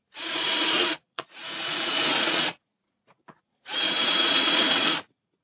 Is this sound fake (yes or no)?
yes